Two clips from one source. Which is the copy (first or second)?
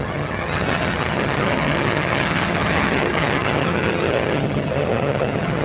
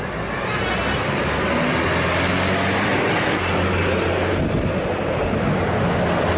first